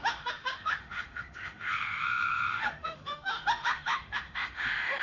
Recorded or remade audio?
remade